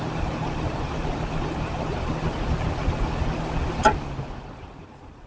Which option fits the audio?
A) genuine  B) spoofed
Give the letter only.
A